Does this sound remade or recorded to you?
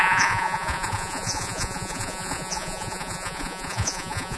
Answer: remade